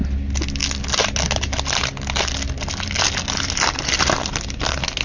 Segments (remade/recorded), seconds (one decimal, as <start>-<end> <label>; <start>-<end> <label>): 0.0-5.0 recorded